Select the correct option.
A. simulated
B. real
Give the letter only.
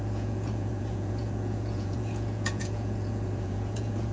A